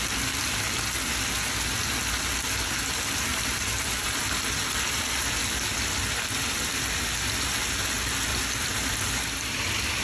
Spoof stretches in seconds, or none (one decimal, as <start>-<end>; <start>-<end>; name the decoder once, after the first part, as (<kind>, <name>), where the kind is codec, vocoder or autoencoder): 3.3-7.0 (vocoder, BigVGAN v2); 8.3-9.0